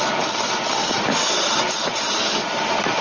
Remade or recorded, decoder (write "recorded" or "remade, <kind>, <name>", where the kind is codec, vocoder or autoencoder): recorded